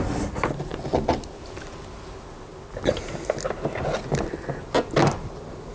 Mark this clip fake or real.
real